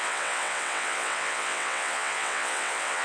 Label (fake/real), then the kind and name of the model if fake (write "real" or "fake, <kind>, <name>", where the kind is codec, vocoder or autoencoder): fake, vocoder, WaveNeXt